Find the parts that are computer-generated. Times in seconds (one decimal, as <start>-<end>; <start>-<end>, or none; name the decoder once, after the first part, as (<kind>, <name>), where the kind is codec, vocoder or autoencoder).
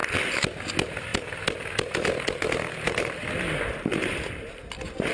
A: none